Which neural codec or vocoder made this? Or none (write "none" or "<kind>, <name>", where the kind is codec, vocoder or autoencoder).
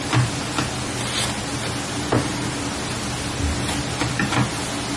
none